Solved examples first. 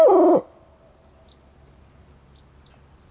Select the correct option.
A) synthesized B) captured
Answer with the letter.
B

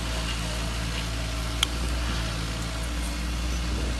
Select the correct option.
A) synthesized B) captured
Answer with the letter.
B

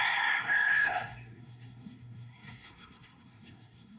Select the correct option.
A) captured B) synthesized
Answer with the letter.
B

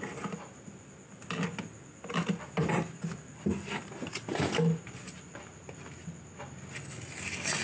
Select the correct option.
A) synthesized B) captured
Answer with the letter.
B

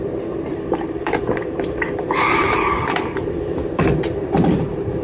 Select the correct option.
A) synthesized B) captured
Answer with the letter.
A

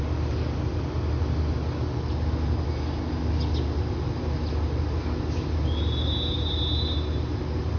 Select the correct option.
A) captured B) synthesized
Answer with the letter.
A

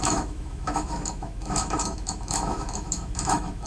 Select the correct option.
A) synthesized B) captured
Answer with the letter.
A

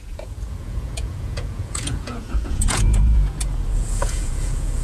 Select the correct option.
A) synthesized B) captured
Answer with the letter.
A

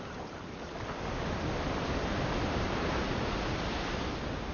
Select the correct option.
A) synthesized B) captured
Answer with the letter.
B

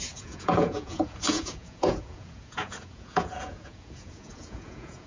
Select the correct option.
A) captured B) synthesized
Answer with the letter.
B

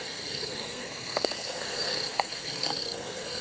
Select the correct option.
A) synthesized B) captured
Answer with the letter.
A